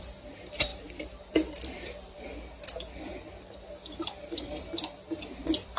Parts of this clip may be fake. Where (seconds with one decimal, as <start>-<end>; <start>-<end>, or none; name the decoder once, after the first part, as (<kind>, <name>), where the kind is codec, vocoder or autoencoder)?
0.0-5.8 (vocoder, BigVGAN v2)